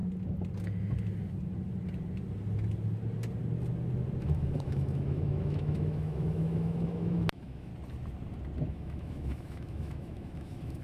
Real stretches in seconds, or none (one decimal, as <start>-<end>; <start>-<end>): 0.0-4.2; 7.7-8.7